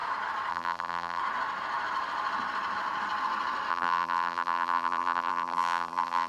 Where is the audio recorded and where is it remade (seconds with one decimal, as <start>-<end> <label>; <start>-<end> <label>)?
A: 0.0-0.5 recorded; 0.5-1.2 remade; 1.2-3.7 recorded; 3.7-6.3 remade